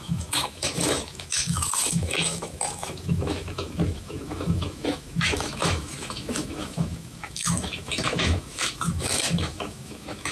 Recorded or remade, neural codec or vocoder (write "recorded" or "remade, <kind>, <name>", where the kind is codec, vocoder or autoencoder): remade, autoencoder, DAC-VAE